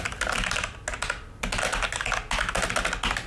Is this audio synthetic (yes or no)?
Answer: no